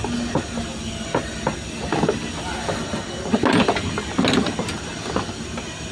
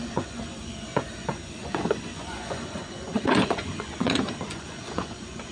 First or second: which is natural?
first